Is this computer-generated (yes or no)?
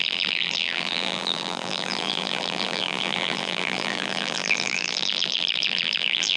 yes